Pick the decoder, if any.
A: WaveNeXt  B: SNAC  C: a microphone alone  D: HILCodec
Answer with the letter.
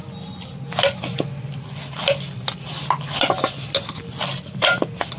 C